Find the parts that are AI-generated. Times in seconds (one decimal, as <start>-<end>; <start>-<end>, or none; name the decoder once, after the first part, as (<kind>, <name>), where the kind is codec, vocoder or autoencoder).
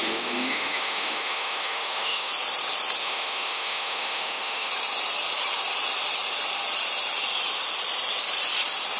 0.0-2.3 (autoencoder, DAC-VAE); 3.0-4.7